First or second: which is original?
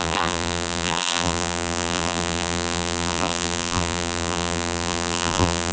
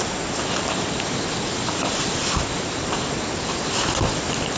second